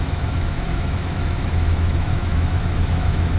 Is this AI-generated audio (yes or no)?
yes